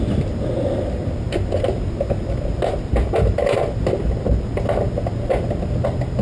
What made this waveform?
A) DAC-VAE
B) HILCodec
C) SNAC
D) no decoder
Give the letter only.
D